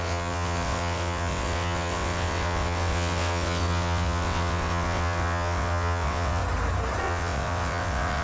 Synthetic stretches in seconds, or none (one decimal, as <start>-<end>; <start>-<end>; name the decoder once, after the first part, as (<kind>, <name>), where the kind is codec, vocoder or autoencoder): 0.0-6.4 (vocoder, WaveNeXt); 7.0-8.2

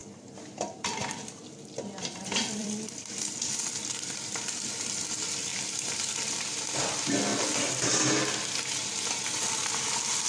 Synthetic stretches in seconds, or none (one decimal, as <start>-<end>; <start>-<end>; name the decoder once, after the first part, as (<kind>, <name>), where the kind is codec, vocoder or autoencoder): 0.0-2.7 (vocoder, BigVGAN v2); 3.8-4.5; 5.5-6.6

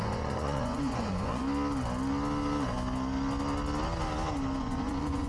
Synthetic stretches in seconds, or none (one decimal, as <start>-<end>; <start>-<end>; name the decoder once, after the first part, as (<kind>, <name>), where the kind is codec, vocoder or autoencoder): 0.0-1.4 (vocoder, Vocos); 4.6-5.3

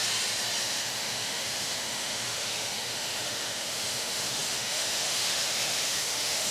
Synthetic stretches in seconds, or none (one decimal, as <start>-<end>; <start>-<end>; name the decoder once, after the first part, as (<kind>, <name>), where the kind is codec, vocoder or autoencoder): 0.6-6.5 (autoencoder, DAC-VAE)

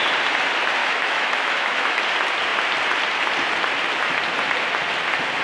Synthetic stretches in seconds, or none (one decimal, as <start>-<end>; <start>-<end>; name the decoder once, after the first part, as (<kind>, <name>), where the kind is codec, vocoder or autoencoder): 0.8-2.0 (autoencoder, DAC-VAE)